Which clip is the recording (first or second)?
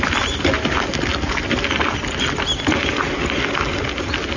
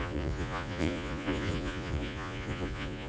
first